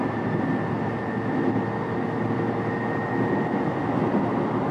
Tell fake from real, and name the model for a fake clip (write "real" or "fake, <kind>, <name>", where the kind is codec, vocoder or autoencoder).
real